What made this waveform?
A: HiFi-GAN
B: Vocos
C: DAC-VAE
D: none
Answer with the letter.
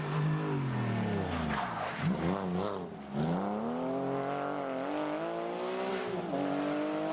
D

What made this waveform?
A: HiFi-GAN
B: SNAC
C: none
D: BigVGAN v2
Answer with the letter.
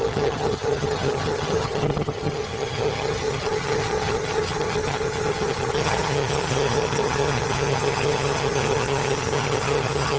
A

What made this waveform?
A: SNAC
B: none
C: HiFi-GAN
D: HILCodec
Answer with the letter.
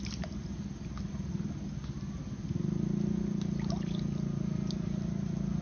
B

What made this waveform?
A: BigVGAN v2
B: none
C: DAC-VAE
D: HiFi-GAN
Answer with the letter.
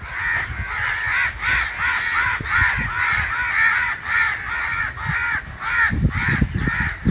B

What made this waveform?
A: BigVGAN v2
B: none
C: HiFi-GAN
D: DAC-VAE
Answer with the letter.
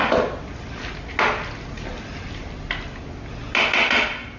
B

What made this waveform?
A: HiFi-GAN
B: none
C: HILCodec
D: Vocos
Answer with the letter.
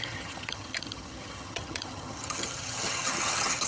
A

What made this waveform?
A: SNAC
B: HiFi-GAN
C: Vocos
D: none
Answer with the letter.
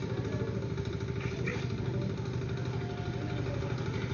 D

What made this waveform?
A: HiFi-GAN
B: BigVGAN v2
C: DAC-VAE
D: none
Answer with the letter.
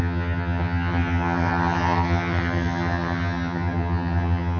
A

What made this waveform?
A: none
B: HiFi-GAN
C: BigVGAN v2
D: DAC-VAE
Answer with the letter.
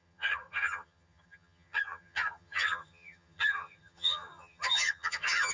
B